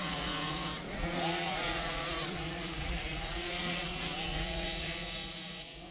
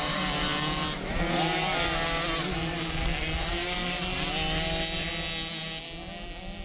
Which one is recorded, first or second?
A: second